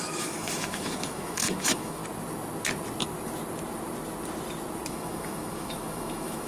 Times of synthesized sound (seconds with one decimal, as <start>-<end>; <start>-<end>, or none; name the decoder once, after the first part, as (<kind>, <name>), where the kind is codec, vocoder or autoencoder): 0.0-2.0 (autoencoder, DAC-VAE); 4.9-6.5

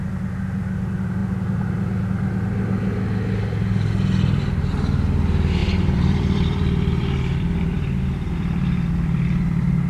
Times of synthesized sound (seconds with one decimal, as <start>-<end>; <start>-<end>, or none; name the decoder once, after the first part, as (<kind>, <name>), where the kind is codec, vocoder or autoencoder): 5.6-9.9 (vocoder, BigVGAN v2)

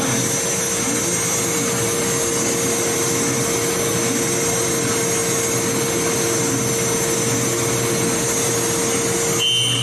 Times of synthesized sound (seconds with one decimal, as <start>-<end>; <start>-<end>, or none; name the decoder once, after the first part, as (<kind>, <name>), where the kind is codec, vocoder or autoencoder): none

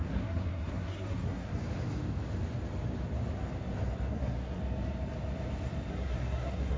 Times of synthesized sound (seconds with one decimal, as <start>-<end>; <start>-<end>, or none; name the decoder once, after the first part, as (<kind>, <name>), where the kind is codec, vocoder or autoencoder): 0.0-1.5 (codec, SNAC); 4.1-4.6; 5.9-6.8

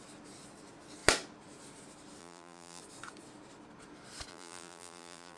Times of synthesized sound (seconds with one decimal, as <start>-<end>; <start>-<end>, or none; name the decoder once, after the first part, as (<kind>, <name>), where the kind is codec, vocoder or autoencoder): 2.2-2.8 (vocoder, BigVGAN v2); 4.3-5.4